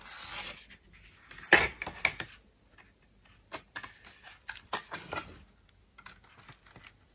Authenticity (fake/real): real